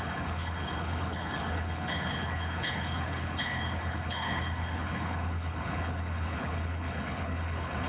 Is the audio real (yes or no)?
no